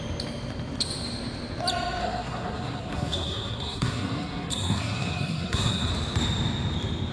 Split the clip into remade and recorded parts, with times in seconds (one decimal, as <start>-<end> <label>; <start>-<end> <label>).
0.0-2.0 recorded; 2.0-5.9 remade; 5.9-7.1 recorded